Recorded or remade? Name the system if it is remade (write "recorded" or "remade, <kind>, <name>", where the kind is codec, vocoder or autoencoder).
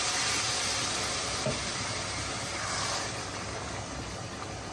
recorded